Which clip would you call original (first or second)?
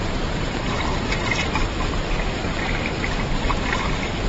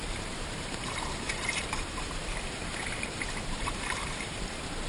first